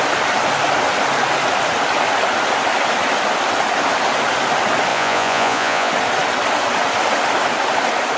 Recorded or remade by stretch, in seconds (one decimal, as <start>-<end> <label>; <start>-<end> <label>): 0.0-4.9 recorded; 4.9-5.9 remade; 5.9-8.2 recorded